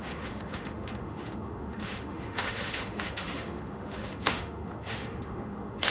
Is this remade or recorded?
remade